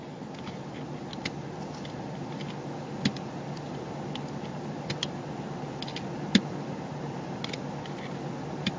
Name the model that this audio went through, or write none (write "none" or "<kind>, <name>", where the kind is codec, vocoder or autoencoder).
none